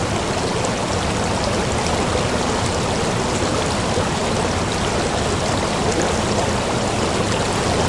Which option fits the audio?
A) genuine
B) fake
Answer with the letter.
A